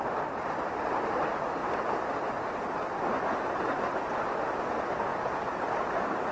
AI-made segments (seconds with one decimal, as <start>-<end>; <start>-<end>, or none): 5.1-5.7